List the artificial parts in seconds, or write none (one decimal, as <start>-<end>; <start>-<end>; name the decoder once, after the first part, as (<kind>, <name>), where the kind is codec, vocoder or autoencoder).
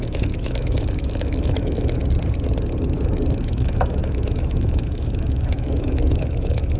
0.0-2.0 (autoencoder, DAC-VAE); 3.4-6.8